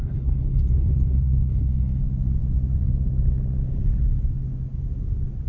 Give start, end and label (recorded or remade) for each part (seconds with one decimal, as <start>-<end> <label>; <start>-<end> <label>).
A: 0.0-2.0 remade; 2.0-5.5 recorded